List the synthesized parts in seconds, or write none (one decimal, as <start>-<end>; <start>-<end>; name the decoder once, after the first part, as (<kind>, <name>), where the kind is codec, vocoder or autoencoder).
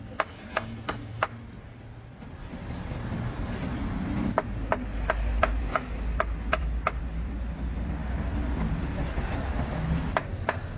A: none